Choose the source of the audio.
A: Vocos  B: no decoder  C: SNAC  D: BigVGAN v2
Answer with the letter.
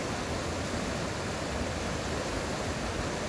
B